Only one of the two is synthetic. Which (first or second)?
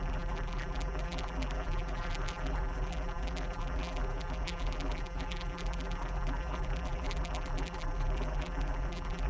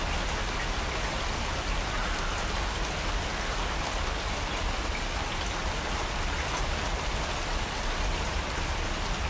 first